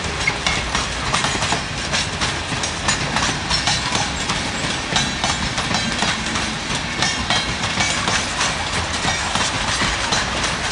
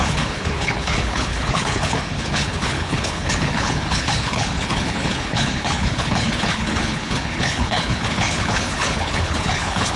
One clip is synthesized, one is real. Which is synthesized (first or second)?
second